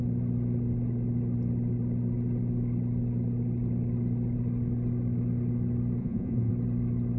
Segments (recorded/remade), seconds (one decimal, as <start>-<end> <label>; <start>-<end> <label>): 0.0-6.0 recorded; 6.0-6.5 remade; 6.5-7.2 recorded